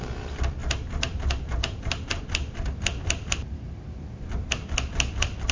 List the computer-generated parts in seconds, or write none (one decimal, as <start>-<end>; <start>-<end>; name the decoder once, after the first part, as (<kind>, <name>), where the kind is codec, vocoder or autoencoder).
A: 0.6-2.2 (vocoder, BigVGAN v2)